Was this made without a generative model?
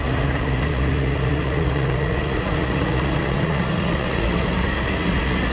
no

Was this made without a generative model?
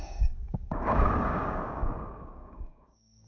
no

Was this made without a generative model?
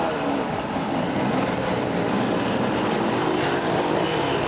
no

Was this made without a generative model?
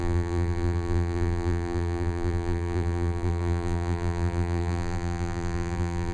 no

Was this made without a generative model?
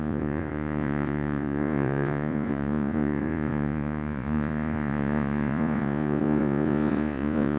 no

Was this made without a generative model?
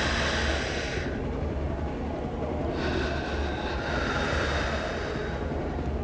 yes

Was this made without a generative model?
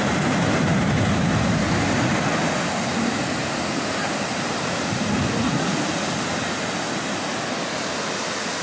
yes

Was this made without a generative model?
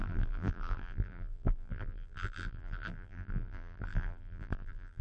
no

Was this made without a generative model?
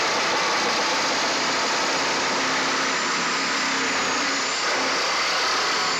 yes